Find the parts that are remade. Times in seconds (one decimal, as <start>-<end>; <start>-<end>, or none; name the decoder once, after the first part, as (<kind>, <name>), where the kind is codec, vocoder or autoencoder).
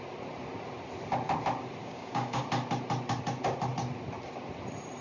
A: 1.8-2.4 (codec, DAC)